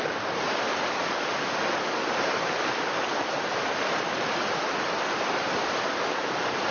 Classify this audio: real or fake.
real